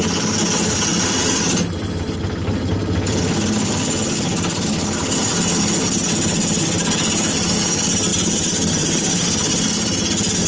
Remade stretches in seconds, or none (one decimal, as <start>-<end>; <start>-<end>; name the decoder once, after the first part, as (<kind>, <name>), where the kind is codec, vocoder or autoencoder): 8.1-9.2 (vocoder, BigVGAN v2)

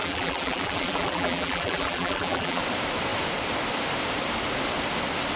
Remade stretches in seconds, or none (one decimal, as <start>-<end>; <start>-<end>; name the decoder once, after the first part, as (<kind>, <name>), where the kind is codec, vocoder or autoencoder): 0.0-2.6 (vocoder, BigVGAN v2)

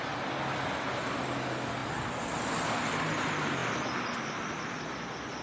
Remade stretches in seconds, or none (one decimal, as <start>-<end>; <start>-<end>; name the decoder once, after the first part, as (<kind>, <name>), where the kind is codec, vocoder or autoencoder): none

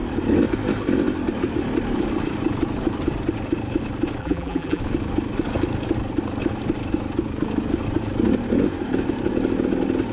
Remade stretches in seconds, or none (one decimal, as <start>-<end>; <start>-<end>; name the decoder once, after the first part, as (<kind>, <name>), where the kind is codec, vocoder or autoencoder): 4.2-4.8 (vocoder, BigVGAN v2)